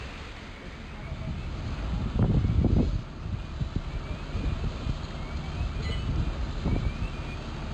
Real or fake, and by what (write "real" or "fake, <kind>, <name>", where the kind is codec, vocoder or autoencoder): real